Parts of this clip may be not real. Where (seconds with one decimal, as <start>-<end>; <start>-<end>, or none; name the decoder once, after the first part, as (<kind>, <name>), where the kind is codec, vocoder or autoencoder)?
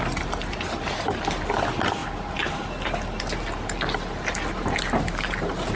none